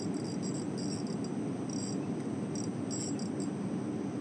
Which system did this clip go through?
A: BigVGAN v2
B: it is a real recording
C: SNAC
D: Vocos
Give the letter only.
B